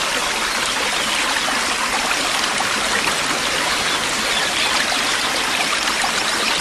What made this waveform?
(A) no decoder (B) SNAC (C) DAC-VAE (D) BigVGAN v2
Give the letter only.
A